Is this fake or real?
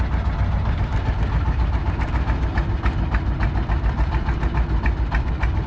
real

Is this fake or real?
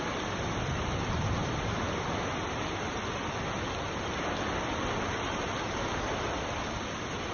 real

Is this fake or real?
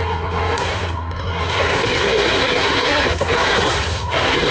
fake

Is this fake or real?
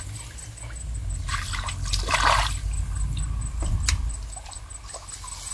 real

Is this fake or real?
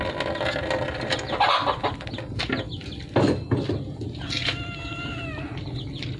real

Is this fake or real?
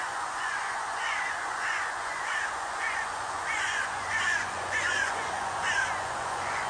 fake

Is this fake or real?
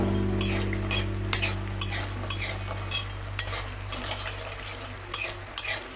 real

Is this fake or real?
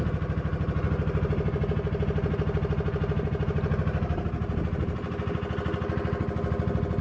real